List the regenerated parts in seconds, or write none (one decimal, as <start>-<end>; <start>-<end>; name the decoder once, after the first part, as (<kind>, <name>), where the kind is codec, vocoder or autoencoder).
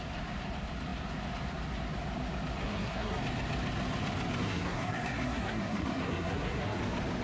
2.6-3.2 (codec, SNAC); 4.4-6.8